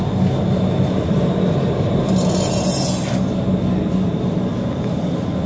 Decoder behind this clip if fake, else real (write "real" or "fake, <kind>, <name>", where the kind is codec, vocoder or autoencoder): real